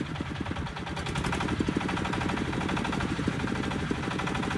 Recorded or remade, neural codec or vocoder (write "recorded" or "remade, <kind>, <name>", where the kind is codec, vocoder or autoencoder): recorded